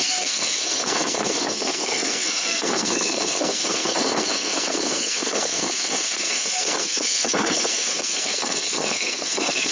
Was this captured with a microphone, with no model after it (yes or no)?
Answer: no